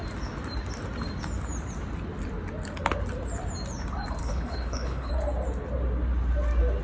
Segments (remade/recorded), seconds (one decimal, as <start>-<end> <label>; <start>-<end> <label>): 0.0-4.2 recorded; 4.2-5.1 remade; 5.1-6.8 recorded